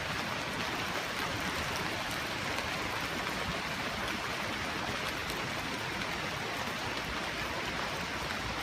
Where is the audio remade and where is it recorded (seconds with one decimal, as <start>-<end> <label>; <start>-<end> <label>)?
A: 0.0-8.6 recorded